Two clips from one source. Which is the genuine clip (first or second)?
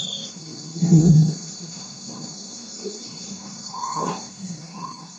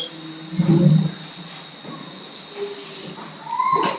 second